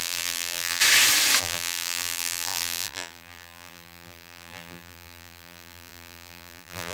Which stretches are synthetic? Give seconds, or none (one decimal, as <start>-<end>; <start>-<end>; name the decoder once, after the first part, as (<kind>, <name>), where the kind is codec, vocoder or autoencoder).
0.0-0.8 (vocoder, BigVGAN v2); 1.4-6.9